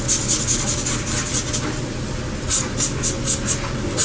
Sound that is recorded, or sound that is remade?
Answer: recorded